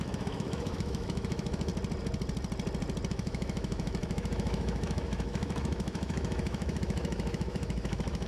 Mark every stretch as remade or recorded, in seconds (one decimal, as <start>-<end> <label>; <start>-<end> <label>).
0.0-1.7 remade; 1.7-3.1 recorded; 3.1-8.3 remade